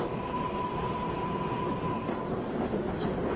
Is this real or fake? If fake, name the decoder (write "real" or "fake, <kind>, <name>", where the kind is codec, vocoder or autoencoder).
real